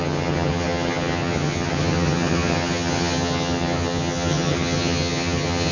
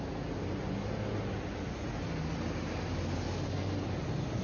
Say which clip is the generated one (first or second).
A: first